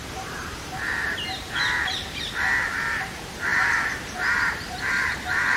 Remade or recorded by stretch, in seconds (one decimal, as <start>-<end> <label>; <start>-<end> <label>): 0.0-5.6 remade